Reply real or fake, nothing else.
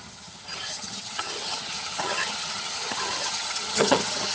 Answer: fake